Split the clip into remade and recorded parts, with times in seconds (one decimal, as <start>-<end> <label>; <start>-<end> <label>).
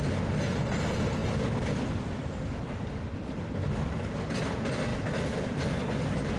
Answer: 0.0-6.4 recorded